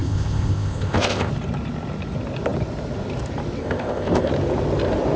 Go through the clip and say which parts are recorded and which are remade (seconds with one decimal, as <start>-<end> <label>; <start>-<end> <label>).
0.0-1.3 remade; 1.3-3.6 recorded; 3.6-4.3 remade; 4.3-5.2 recorded